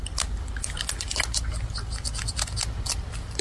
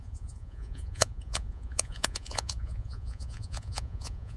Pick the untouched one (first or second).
first